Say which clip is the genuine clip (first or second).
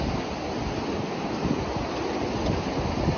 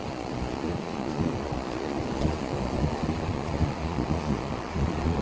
first